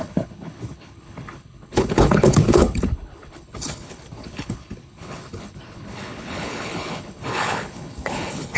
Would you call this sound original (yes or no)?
no